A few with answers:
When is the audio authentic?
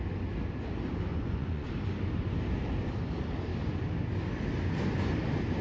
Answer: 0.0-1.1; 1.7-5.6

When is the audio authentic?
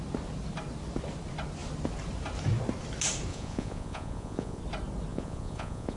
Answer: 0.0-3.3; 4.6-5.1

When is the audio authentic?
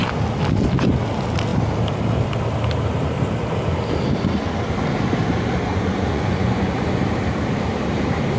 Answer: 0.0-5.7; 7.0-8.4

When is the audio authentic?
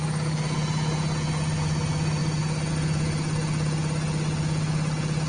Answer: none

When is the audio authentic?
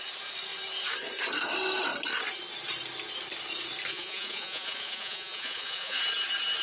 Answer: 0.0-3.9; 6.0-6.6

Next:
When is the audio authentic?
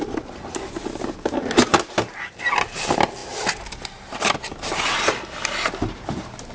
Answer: 0.0-6.5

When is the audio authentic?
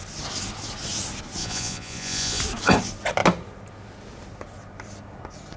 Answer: 0.0-1.4; 2.4-5.6